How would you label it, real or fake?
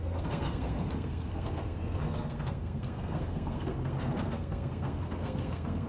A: fake